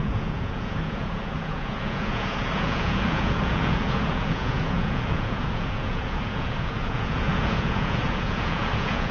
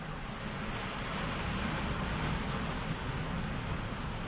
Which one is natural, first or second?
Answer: second